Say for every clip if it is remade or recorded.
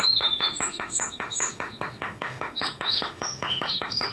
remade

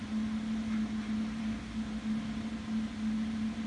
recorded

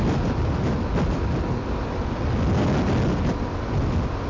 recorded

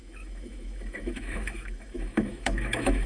remade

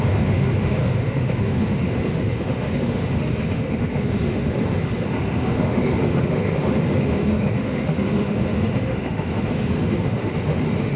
remade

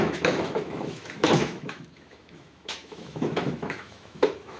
remade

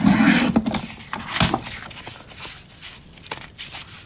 recorded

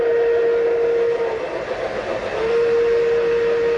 recorded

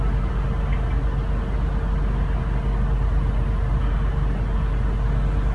recorded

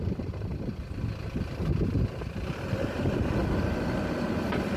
recorded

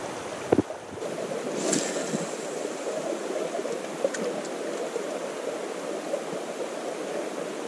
recorded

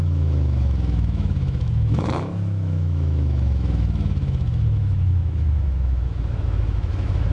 remade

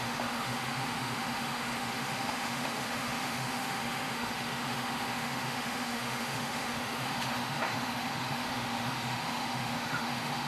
remade